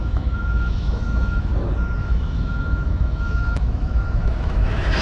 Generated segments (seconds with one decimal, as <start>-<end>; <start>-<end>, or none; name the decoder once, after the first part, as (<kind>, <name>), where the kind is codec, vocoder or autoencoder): 0.0-1.5 (autoencoder, DAC-VAE); 2.0-5.0